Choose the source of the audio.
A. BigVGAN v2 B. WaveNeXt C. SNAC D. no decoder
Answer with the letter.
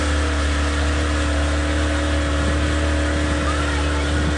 D